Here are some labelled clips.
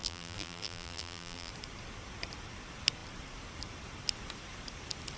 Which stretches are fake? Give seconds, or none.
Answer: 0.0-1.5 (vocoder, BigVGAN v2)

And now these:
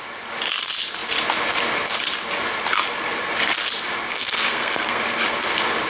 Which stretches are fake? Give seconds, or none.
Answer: 4.1-5.0 (codec, SNAC)